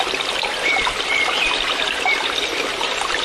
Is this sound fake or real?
fake